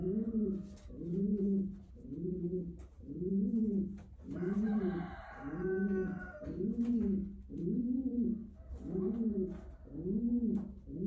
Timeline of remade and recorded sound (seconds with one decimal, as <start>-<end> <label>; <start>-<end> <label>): 0.0-1.3 recorded; 1.3-1.9 remade; 1.9-2.8 recorded; 2.8-6.7 remade; 6.7-11.1 recorded